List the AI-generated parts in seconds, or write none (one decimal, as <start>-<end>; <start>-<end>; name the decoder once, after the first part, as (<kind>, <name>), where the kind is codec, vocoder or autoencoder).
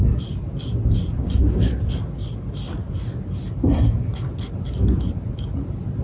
1.1-1.8 (codec, DAC)